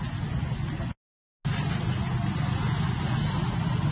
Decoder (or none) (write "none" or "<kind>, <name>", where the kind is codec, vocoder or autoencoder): none